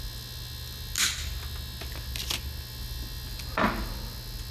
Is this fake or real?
real